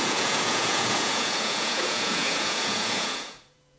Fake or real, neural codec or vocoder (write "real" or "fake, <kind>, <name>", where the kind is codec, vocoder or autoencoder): fake, vocoder, Vocos